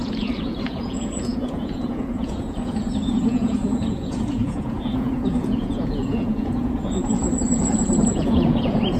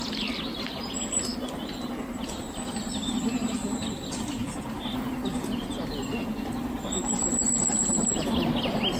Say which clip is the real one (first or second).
second